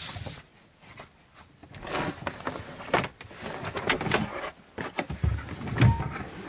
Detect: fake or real real